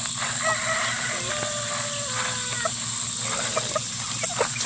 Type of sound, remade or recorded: recorded